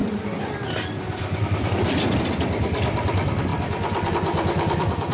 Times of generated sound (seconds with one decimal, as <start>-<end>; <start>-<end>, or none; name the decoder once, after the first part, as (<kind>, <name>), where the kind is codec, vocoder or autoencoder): 0.0-3.5 (vocoder, BigVGAN v2); 4.1-5.1